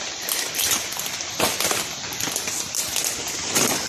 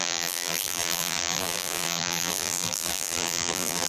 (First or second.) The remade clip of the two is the second